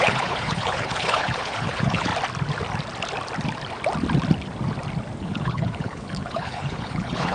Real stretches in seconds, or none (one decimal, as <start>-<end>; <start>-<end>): 2.1-5.2